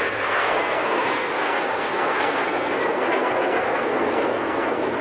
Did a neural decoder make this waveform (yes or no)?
yes